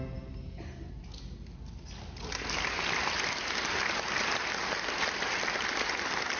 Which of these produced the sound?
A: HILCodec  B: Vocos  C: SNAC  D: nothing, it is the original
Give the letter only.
D